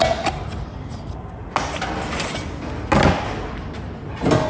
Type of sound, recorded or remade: recorded